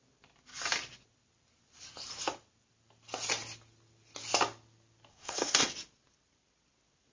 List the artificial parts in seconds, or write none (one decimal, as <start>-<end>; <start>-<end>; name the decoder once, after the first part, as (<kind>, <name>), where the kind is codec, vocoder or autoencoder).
5.1-5.7 (codec, SNAC)